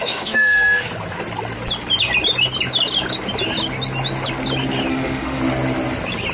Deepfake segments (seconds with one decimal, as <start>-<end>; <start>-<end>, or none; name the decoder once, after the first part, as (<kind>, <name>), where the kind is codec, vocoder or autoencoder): 0.0-0.9 (autoencoder, DAC-VAE); 4.9-5.4